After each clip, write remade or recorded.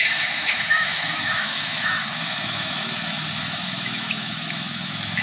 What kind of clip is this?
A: remade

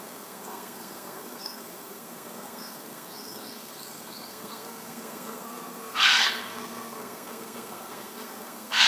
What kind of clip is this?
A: remade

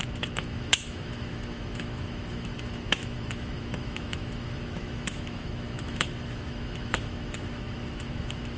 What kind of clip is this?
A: remade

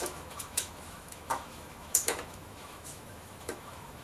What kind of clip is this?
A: remade